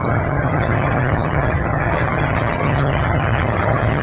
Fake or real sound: fake